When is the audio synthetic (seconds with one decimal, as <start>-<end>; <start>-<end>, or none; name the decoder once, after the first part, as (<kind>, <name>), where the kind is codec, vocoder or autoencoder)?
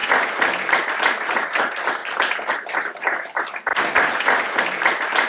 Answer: none